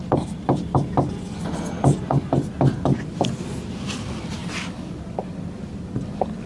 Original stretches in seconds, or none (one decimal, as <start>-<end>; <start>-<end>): 0.0-6.5